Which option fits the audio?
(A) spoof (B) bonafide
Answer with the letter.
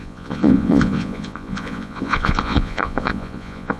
A